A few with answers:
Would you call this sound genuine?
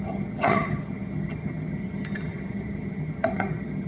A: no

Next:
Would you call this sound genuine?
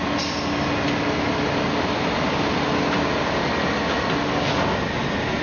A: yes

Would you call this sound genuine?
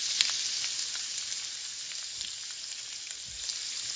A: yes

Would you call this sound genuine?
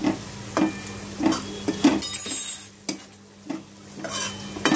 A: yes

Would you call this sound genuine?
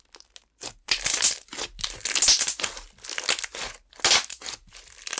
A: yes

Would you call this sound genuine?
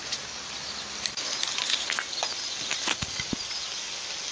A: yes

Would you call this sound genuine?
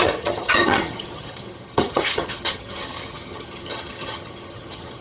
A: no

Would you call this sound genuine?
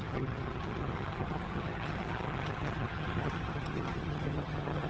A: no